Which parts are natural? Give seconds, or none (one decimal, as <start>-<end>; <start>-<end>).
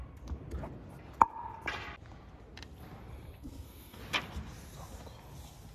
0.0-3.4; 4.0-5.7